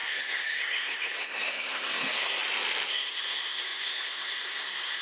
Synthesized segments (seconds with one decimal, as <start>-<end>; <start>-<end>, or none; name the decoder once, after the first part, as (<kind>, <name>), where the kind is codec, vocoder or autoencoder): 0.0-2.4 (codec, SNAC); 2.9-5.0